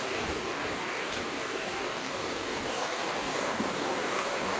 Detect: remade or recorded remade